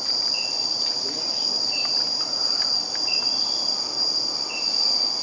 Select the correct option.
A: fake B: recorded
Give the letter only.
B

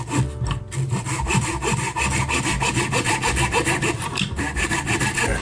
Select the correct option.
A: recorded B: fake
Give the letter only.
A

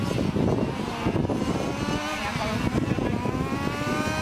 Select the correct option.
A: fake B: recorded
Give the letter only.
B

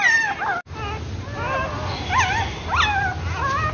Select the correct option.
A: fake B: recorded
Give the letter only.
B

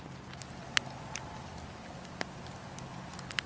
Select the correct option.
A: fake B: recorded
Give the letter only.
B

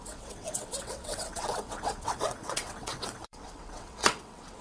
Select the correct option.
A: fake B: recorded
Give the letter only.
A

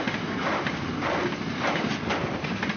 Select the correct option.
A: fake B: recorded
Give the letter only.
B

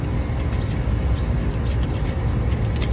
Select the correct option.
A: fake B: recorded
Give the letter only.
B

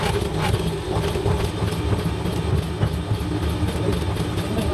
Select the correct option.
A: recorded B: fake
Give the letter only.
A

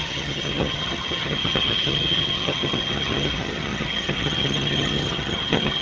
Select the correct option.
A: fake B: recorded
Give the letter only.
A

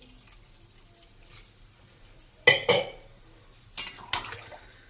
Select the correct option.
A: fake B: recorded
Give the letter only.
B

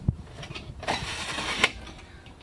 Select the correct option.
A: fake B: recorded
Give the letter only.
A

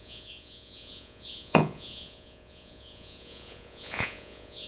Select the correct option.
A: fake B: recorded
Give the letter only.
A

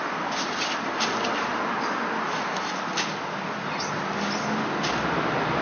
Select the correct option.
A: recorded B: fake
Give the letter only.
A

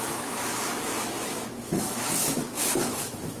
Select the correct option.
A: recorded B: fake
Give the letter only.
B